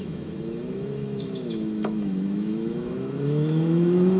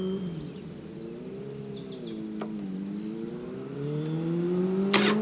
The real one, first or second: second